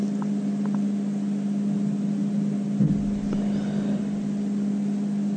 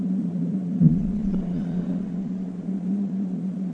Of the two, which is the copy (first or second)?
second